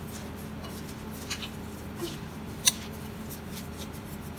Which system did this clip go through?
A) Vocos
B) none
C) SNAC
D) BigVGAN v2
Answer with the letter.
B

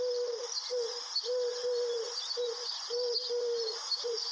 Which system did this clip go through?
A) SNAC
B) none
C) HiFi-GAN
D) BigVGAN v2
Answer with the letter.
D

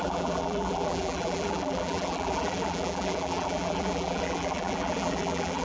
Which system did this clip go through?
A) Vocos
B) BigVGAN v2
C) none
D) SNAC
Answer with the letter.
B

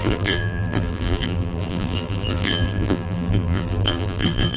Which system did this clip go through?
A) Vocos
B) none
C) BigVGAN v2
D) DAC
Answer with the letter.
C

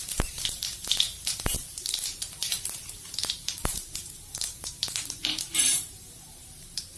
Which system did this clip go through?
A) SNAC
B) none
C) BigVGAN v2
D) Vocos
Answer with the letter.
C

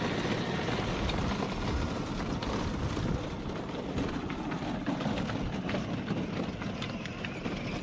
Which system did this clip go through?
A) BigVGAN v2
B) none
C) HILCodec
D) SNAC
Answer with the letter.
B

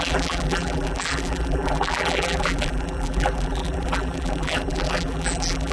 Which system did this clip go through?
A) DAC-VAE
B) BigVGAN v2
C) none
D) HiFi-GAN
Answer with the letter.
B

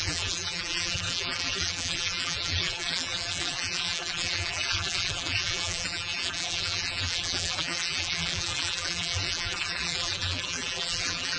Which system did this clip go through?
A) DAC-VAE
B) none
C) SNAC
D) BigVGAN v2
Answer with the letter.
D